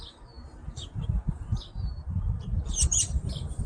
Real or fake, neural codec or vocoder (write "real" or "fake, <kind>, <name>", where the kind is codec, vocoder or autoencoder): fake, vocoder, BigVGAN v2